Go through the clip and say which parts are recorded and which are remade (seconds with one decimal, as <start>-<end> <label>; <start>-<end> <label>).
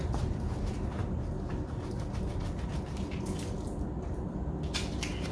0.0-5.3 recorded